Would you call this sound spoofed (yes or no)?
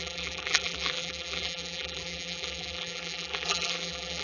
yes